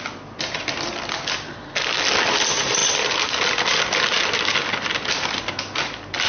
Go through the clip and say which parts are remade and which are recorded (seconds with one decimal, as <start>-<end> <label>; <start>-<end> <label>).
0.0-6.3 recorded